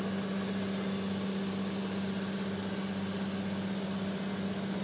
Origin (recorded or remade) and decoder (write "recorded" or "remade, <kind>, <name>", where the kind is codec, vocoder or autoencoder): recorded